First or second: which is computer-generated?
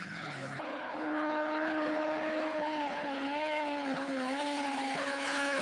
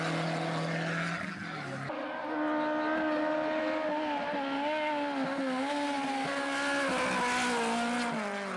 first